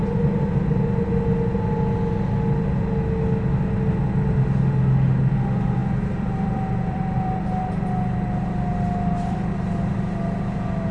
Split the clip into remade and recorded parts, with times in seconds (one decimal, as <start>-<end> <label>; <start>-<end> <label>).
0.0-5.8 recorded; 5.8-9.5 remade; 9.5-10.9 recorded

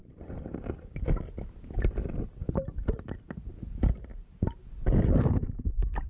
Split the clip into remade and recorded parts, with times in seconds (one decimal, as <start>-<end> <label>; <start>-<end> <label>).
0.0-6.1 recorded

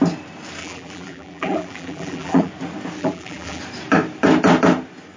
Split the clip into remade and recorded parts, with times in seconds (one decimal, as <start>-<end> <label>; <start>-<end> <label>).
0.0-0.6 recorded; 0.6-2.5 remade; 2.5-3.0 recorded; 3.0-3.6 remade; 3.6-5.2 recorded

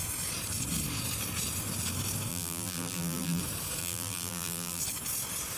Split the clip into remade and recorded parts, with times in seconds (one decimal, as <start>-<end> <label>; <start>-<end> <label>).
0.0-2.3 recorded; 2.3-3.4 remade; 3.4-3.8 recorded; 3.8-4.8 remade; 4.8-5.6 recorded

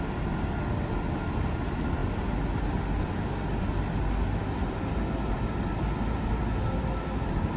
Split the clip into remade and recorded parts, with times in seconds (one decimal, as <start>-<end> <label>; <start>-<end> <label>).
0.0-7.6 recorded

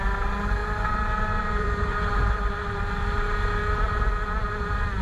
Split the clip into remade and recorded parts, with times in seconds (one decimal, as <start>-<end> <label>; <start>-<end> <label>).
0.0-0.6 recorded; 0.6-3.6 remade; 3.6-5.0 recorded

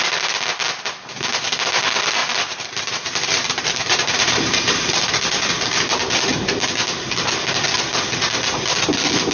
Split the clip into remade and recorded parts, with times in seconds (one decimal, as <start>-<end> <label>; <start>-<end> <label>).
0.0-2.2 recorded; 2.2-5.1 remade; 5.1-9.3 recorded

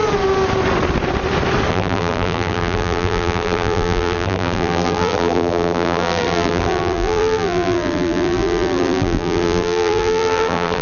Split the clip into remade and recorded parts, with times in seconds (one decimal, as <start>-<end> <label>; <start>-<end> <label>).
0.0-1.7 recorded; 1.7-10.8 remade